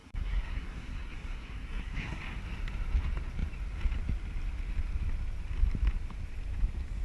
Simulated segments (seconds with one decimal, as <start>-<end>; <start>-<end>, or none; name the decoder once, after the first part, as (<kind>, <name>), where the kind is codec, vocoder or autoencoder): 0.0-2.2 (codec, SNAC)